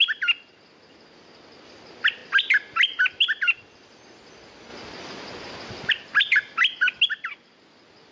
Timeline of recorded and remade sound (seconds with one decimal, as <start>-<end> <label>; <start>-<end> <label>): 0.0-8.1 recorded